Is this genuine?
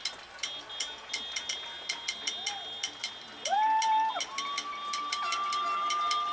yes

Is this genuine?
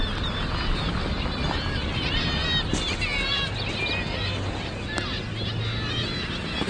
yes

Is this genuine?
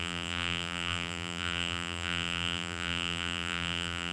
no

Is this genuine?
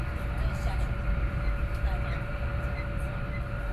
no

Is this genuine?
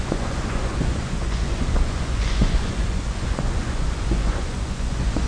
no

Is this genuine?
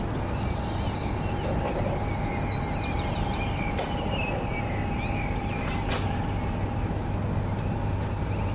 yes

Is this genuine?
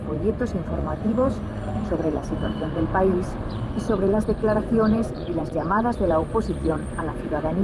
no